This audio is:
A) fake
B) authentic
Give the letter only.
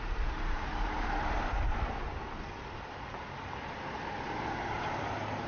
B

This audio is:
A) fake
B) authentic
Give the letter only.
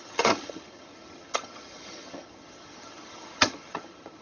A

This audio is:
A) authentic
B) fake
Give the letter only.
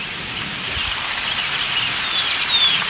A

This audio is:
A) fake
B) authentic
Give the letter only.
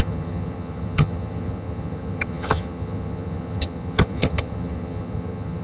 A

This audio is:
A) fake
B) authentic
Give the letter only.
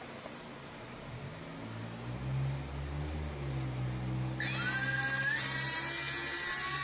B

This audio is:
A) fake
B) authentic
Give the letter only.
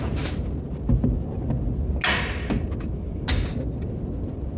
B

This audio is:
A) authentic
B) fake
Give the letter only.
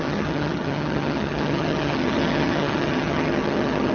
B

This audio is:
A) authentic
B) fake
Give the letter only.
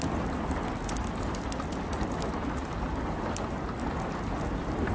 A